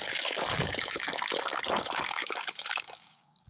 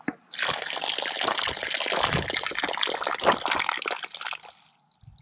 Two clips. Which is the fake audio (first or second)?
first